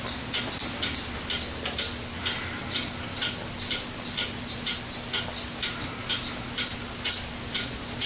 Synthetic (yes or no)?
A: no